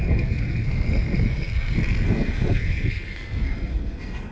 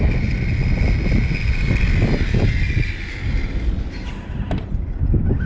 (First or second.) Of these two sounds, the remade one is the first